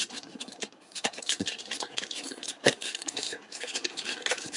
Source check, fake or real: fake